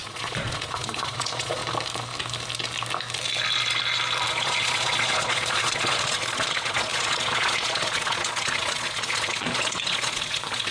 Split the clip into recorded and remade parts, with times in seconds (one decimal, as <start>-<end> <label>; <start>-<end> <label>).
0.0-1.6 remade; 1.6-4.3 recorded; 4.3-10.7 remade